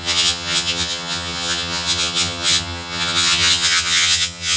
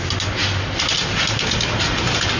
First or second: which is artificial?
first